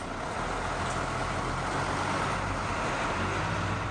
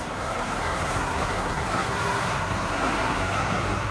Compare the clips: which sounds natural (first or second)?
first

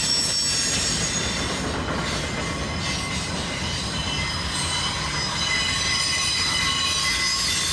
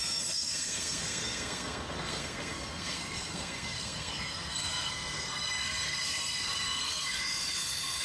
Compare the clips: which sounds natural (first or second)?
first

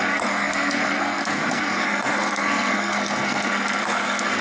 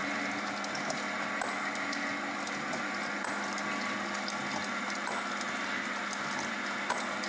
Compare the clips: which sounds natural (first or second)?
second